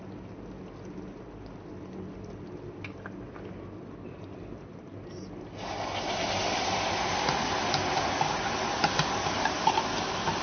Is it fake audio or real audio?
real